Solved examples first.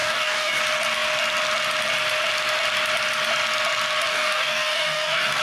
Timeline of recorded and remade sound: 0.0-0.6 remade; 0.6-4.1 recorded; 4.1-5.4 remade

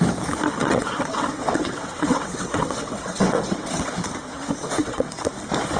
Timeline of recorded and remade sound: 0.0-0.6 recorded; 0.6-3.9 remade; 3.9-4.8 recorded; 4.8-5.3 remade; 5.3-5.8 recorded